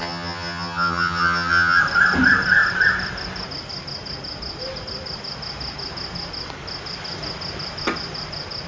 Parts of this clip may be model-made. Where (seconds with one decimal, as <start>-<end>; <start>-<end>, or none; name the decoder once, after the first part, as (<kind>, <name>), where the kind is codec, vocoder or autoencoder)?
0.0-1.8 (vocoder, HiFi-GAN)